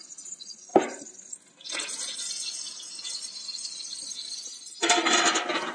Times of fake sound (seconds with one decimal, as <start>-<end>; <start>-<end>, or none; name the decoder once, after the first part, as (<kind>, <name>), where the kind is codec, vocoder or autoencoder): none